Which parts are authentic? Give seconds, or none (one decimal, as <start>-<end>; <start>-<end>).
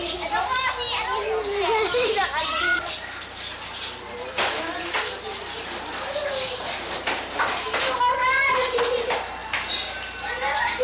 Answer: 0.0-10.8